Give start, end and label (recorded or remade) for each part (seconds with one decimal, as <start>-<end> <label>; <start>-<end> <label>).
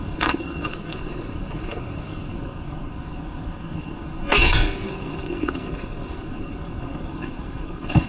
0.0-8.1 remade